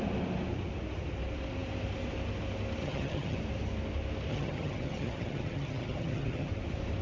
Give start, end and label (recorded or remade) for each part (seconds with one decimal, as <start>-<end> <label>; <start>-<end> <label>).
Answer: 0.0-2.8 recorded; 2.8-3.4 remade; 3.4-4.3 recorded; 4.3-6.5 remade; 6.5-7.0 recorded